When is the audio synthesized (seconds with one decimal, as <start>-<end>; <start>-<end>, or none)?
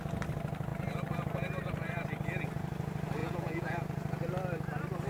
3.2-3.8